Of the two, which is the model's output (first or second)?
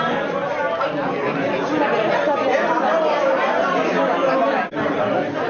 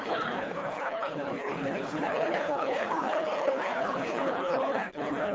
second